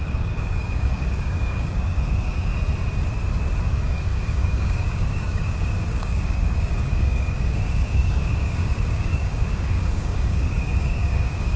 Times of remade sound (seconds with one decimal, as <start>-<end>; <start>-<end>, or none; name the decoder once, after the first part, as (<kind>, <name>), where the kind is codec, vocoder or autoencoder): 0.0-2.5 (codec, DAC); 3.6-11.6